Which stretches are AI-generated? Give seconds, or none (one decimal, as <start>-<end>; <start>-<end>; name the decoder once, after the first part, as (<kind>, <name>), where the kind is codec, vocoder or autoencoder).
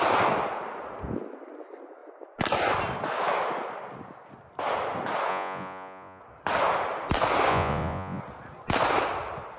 5.3-6.2 (vocoder, Vocos); 7.5-8.2